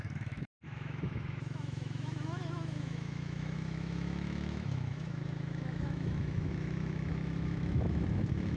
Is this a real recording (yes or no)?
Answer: no